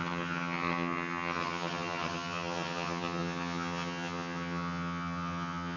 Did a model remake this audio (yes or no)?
yes